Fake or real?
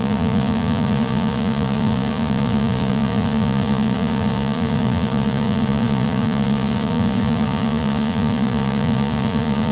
fake